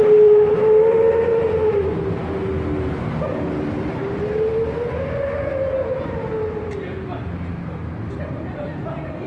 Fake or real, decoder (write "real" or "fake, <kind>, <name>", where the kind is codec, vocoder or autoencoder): real